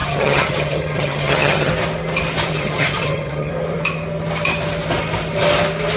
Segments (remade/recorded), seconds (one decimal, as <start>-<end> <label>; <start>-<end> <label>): 0.0-1.7 remade; 1.7-2.5 recorded; 2.5-3.5 remade; 3.5-6.0 recorded